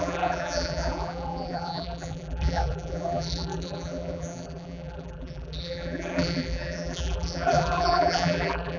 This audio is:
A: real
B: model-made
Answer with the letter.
B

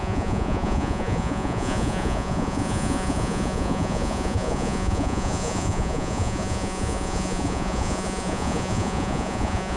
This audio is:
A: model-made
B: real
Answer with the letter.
A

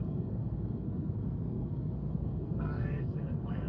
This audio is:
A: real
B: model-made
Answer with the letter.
B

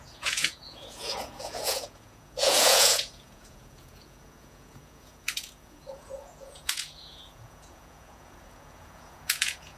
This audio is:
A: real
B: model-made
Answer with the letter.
B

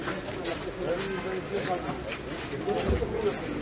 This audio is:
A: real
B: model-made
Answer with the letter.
A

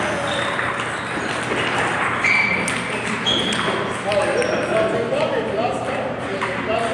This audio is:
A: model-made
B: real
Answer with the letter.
B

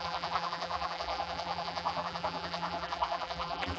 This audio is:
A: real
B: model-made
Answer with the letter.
B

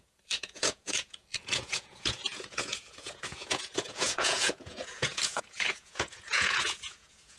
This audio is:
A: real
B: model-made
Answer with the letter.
B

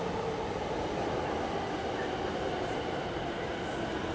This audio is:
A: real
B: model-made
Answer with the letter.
A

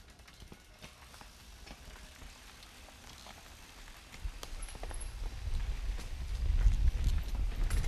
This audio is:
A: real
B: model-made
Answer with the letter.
A